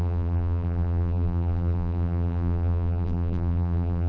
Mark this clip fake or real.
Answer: fake